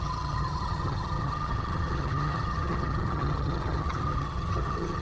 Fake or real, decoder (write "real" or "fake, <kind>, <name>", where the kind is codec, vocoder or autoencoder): fake, vocoder, HiFi-GAN